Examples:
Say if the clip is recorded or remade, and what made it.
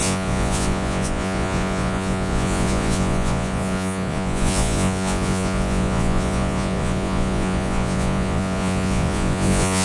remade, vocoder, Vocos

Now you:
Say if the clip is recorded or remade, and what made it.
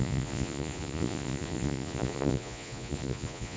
remade, vocoder, Vocos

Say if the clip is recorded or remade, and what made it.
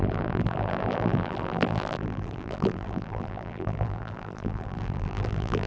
remade, vocoder, BigVGAN v2